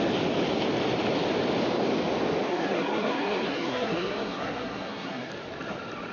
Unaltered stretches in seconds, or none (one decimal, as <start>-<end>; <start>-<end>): 0.0-2.5; 5.3-6.1